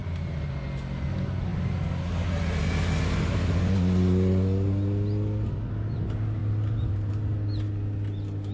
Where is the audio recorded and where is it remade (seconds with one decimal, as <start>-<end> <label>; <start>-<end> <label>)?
0.0-0.5 remade; 0.5-6.4 recorded; 6.4-7.1 remade; 7.1-8.5 recorded